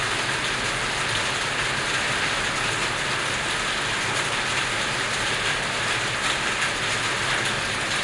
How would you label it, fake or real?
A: real